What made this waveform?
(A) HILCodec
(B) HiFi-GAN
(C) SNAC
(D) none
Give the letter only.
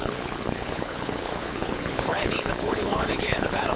A